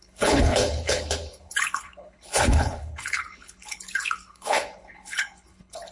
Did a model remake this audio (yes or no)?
yes